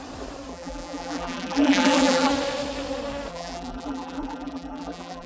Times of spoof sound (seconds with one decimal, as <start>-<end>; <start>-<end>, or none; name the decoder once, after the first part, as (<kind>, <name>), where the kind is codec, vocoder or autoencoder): 0.5-2.3 (vocoder, BigVGAN v2); 3.3-5.3